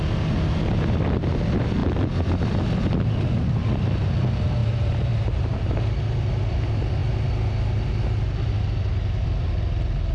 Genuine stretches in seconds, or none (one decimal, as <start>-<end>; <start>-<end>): 0.0-4.6; 5.8-10.1